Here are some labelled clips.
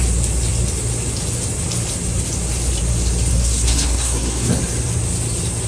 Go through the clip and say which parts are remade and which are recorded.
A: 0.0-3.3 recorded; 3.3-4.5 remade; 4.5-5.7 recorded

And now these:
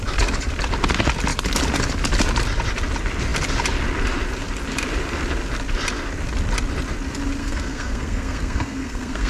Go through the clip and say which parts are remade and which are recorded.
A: 0.0-7.4 recorded; 7.4-9.3 remade